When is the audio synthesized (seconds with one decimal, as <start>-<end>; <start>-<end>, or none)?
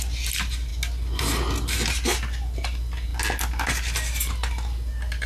none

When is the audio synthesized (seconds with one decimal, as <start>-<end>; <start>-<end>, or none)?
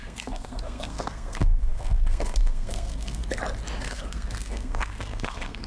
0.0-3.2; 3.8-5.7